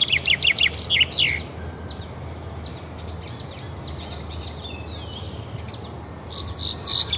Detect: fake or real real